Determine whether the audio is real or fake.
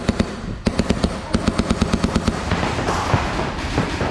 real